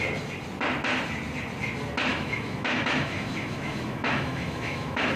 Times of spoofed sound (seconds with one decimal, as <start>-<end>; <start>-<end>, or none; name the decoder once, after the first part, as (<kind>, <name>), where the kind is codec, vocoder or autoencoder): 2.1-5.2 (autoencoder, DAC-VAE)